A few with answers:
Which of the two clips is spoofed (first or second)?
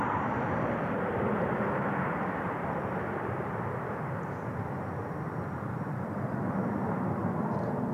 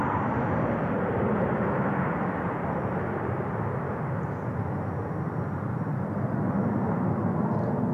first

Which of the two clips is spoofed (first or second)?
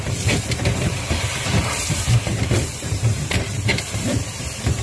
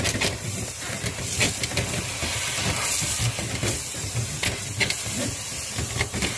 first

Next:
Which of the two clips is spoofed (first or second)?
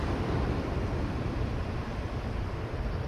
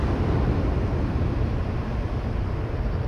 first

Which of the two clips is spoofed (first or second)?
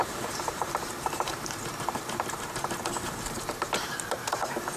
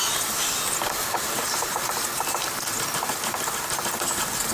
first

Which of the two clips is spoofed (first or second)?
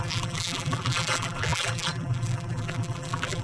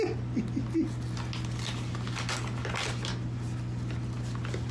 first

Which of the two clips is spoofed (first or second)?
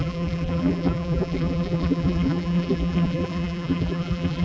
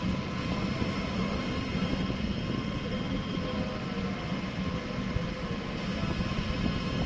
first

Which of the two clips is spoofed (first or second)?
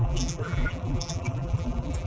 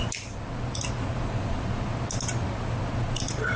first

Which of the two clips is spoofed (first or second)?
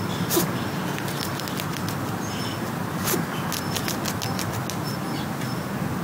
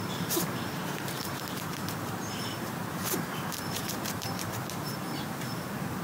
second